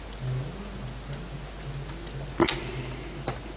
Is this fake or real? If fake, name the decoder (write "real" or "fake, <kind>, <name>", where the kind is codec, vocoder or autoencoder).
real